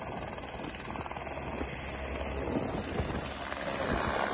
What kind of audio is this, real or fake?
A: real